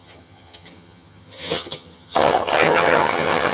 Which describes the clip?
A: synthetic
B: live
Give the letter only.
A